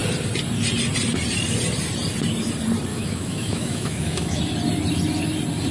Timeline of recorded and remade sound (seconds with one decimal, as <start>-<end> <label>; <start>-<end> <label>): 0.0-2.9 recorded; 2.9-4.4 remade; 4.4-5.7 recorded